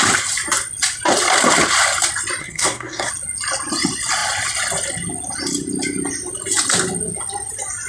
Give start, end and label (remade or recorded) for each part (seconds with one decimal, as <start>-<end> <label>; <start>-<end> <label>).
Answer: 0.0-2.4 recorded; 2.4-3.1 remade; 3.1-7.9 recorded